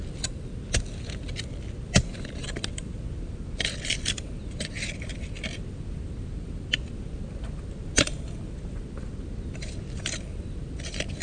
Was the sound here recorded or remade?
recorded